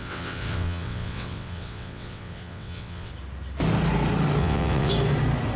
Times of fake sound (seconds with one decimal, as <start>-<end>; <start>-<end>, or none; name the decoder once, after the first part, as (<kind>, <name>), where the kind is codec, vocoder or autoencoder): 0.0-3.1 (vocoder, WaveNeXt); 4.4-4.9